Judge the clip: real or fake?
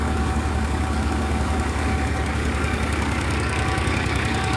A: fake